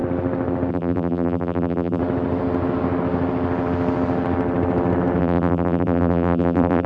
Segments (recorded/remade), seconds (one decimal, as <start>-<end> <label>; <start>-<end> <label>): 0.0-0.7 recorded; 0.7-2.0 remade; 2.0-5.2 recorded; 5.2-6.9 remade